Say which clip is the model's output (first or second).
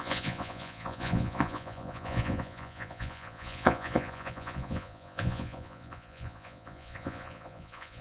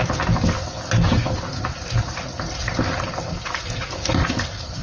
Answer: first